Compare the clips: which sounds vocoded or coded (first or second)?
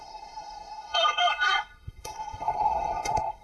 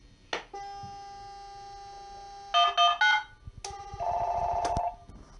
first